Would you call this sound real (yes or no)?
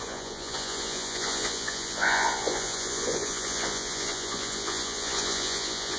no